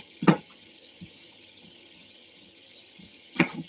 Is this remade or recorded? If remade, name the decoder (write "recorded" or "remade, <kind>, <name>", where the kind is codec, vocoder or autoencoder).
remade, vocoder, HiFi-GAN